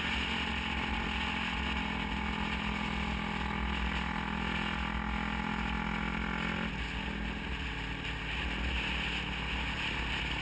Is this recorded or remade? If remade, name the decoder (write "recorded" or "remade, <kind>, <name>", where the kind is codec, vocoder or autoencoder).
recorded